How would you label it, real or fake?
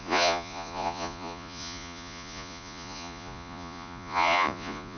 fake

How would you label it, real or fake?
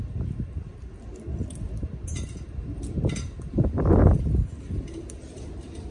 real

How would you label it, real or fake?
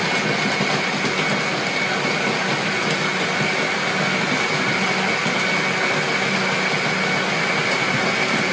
real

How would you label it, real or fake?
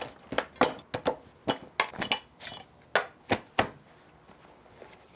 real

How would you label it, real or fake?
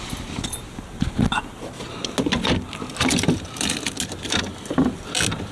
real